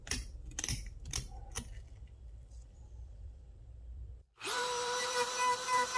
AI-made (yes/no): yes